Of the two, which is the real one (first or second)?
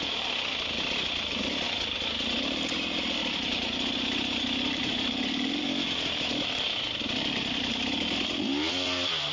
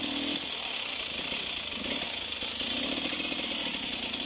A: second